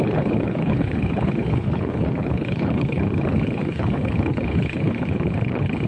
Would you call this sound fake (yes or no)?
yes